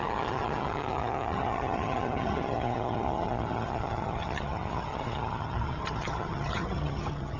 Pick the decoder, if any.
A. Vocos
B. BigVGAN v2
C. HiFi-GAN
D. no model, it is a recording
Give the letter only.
C